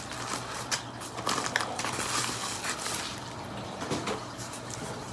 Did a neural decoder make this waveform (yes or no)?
no